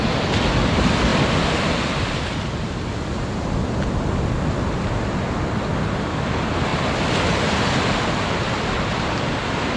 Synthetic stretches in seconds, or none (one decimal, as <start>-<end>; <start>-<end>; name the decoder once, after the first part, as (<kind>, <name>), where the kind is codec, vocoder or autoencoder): none